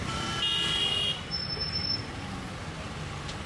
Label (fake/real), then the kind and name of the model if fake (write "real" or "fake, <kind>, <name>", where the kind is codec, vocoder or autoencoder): real